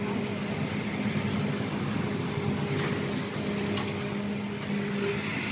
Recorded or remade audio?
recorded